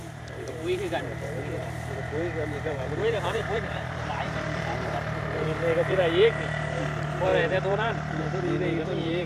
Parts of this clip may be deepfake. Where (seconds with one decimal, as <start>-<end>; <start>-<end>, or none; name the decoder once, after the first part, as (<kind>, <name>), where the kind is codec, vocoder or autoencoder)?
0.0-9.3 (vocoder, BigVGAN v2)